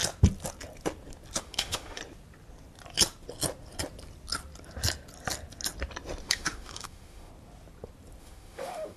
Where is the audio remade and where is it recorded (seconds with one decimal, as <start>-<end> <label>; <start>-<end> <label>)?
0.0-1.4 recorded; 1.4-2.0 remade; 2.0-6.2 recorded; 6.2-7.3 remade; 7.3-8.2 recorded; 8.2-9.0 remade